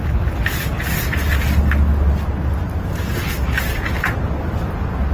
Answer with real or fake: real